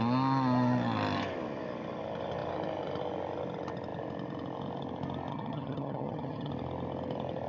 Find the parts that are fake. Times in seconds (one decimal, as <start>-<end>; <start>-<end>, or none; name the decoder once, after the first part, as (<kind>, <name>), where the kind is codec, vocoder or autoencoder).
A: 5.3-6.5 (vocoder, HiFi-GAN)